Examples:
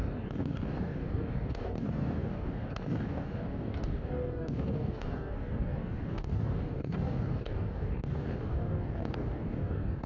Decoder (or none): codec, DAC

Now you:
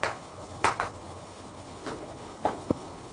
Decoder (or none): codec, HILCodec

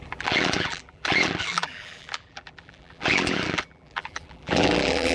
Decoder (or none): vocoder, BigVGAN v2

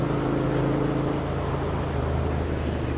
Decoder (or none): none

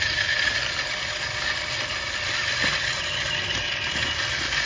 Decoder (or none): none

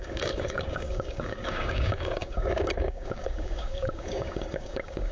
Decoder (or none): codec, DAC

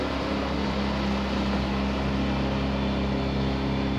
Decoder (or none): none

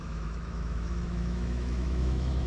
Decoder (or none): autoencoder, DAC-VAE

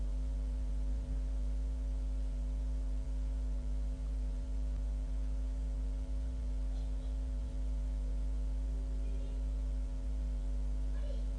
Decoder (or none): vocoder, BigVGAN v2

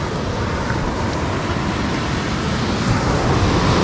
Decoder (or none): none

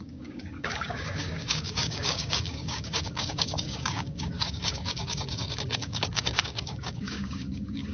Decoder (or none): codec, DAC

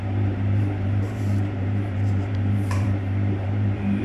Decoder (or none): vocoder, BigVGAN v2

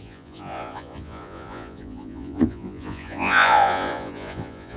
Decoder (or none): vocoder, Vocos